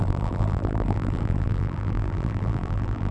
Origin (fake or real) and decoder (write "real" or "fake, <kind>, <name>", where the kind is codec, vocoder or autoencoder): fake, vocoder, BigVGAN v2